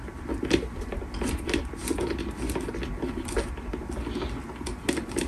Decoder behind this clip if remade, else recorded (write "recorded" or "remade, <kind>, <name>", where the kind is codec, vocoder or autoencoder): recorded